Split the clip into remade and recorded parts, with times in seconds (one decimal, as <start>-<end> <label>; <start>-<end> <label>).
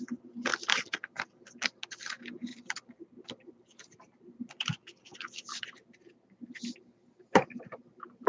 0.0-0.5 recorded; 0.5-1.1 remade; 1.1-2.5 recorded; 2.5-6.1 remade; 6.1-8.3 recorded